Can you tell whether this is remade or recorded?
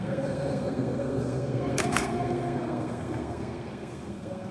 remade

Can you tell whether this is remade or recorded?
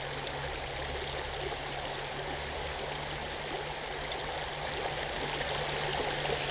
recorded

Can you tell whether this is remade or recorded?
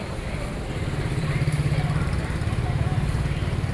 remade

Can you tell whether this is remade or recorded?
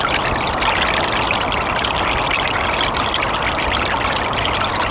recorded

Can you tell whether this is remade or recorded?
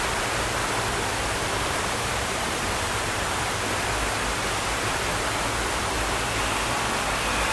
remade